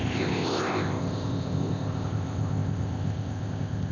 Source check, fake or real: fake